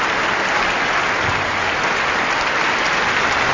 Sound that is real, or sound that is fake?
real